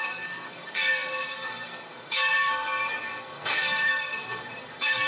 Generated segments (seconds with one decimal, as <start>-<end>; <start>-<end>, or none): 0.0-5.1